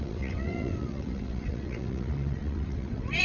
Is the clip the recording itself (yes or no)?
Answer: no